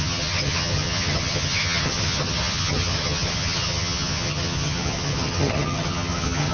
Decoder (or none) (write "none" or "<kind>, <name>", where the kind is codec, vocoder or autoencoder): vocoder, HiFi-GAN